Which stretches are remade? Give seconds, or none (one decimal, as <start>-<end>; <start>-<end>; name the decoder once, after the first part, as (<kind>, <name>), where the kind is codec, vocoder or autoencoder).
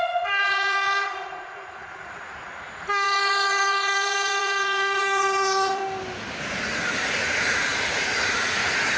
0.0-5.8 (vocoder, Vocos); 6.4-9.0